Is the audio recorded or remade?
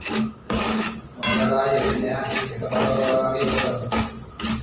recorded